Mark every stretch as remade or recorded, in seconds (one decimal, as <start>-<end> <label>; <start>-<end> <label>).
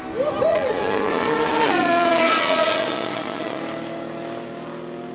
0.0-0.5 recorded; 0.5-3.6 remade; 3.6-5.1 recorded